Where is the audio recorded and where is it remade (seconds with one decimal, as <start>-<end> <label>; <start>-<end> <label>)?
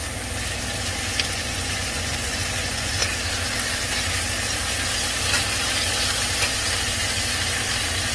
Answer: 0.0-1.2 recorded; 1.2-3.0 remade; 3.0-8.1 recorded